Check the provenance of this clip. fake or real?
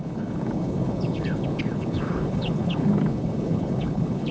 fake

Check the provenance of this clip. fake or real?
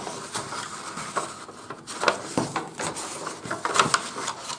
real